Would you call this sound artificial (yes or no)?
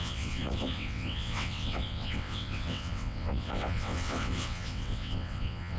yes